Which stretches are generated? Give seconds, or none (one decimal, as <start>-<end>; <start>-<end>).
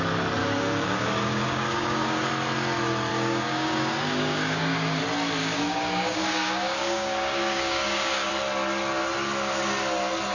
0.4-2.3; 3.1-5.0; 5.4-8.3